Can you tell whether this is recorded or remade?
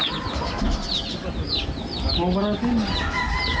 recorded